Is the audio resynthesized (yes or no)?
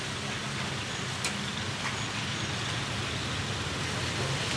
no